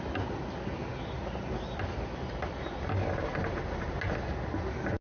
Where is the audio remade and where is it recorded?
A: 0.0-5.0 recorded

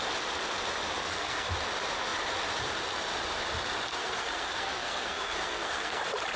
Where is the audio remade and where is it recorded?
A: 0.0-1.0 recorded; 1.0-1.5 remade; 1.5-3.9 recorded; 3.9-6.0 remade; 6.0-6.4 recorded

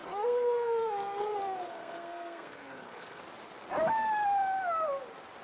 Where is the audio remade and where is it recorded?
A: 0.0-3.2 remade; 3.2-5.4 recorded

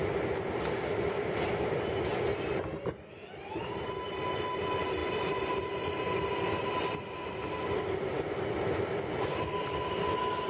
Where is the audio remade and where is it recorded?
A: 0.0-10.5 recorded

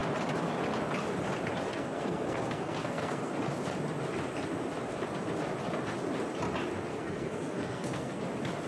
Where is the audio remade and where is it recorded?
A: 0.0-1.7 recorded; 1.7-3.3 remade; 3.3-6.9 recorded; 6.9-8.2 remade; 8.2-8.7 recorded